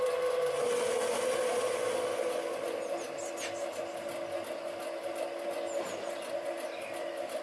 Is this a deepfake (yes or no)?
no